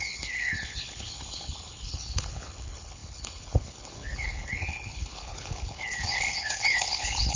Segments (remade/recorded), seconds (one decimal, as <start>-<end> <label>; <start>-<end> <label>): 0.0-7.4 remade